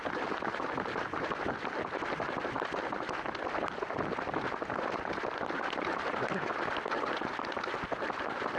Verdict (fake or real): real